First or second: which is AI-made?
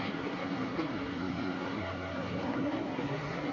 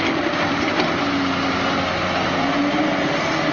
first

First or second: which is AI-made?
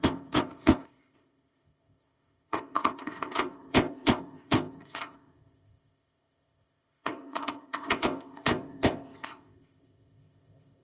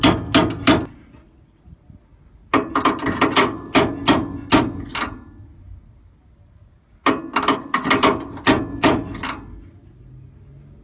first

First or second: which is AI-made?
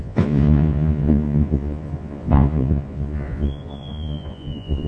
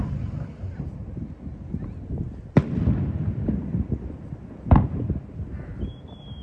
first